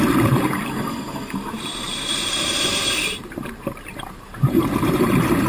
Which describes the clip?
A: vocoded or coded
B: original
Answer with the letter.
A